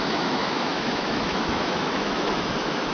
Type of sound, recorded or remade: remade